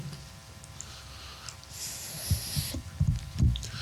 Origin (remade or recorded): recorded